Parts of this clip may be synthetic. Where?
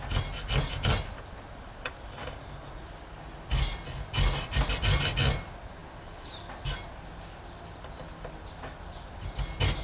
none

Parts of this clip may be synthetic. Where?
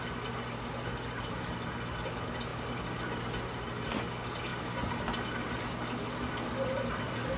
none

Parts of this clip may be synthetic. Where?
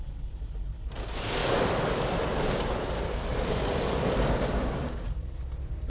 1.4-4.9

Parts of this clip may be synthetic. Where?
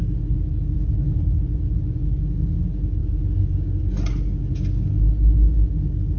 none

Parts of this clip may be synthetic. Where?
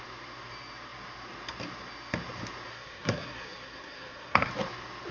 2.7-4.5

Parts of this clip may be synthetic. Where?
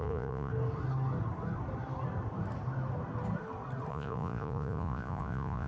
0.0-0.5; 3.9-5.7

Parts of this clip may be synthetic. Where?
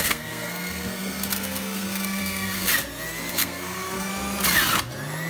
0.0-2.7; 3.3-4.1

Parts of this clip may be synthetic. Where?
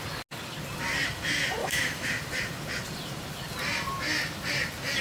1.6-2.1